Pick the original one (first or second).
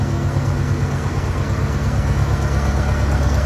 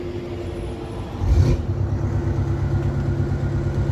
second